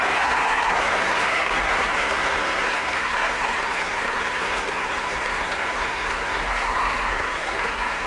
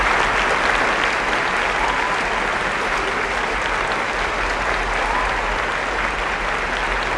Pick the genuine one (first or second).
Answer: second